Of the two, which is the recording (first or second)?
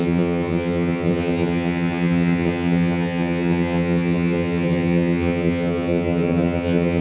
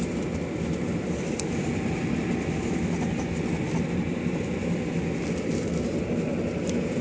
second